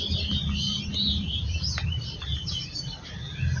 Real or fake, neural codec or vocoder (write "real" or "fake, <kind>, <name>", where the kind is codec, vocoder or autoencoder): real